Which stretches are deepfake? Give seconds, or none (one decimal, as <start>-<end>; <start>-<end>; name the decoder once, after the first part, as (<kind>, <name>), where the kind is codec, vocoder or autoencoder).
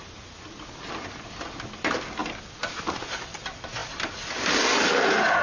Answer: none